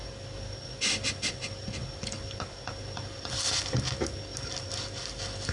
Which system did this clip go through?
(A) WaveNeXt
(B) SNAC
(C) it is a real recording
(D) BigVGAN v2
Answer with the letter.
C